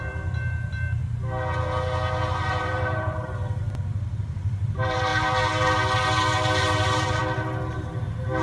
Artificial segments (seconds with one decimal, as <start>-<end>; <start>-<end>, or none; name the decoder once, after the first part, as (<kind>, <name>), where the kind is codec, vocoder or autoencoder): 0.0-1.0 (vocoder, BigVGAN v2); 2.5-5.1; 6.6-7.2; 7.7-8.4

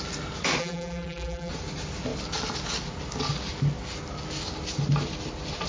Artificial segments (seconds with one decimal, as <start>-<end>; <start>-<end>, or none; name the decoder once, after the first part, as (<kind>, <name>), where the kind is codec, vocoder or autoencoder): 0.6-1.5 (vocoder, BigVGAN v2)

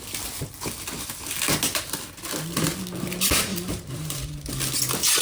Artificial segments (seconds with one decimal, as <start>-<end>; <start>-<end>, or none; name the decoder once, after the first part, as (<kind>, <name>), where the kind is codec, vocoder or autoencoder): 3.5-4.5 (vocoder, BigVGAN v2)

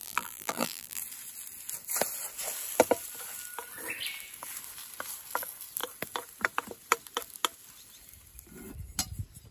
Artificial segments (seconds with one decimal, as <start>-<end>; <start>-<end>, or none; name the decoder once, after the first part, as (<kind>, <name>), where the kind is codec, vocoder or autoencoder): 0.0-1.0 (vocoder, BigVGAN v2)